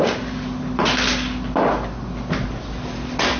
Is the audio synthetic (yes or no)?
no